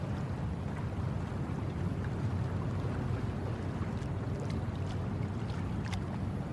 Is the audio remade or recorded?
recorded